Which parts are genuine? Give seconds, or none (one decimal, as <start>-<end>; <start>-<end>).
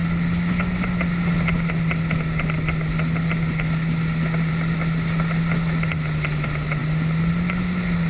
0.0-8.1